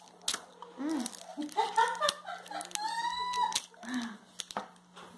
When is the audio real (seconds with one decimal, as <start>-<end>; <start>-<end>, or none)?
0.0-5.2